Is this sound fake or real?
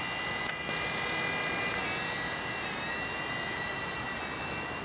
real